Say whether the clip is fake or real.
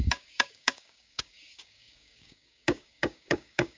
fake